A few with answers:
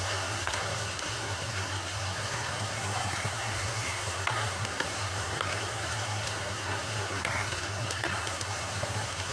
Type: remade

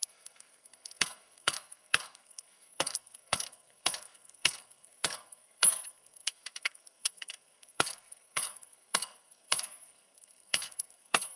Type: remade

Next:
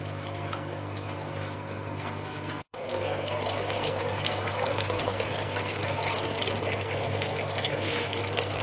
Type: remade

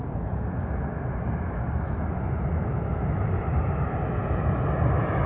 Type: recorded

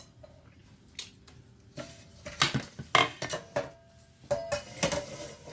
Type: recorded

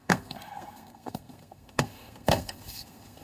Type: remade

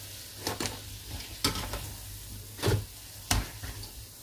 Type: recorded